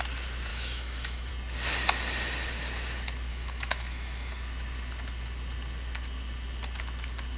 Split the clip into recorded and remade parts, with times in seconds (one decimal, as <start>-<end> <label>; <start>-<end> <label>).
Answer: 0.0-0.5 recorded; 0.5-1.3 remade; 1.3-3.3 recorded; 3.3-4.3 remade; 4.3-7.4 recorded